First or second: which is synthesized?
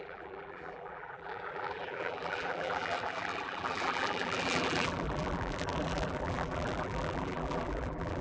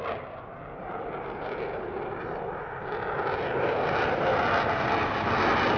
first